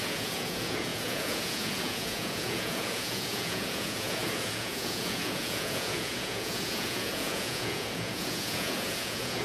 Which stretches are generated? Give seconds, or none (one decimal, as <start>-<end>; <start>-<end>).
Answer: 0.0-9.4